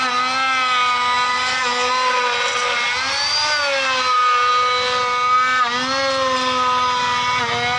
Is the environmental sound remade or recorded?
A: recorded